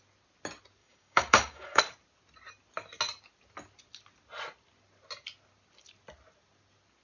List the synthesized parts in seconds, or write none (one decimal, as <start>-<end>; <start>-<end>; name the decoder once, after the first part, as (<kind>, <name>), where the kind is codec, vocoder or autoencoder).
0.8-1.8 (codec, DAC)